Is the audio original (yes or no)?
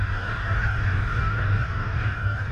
no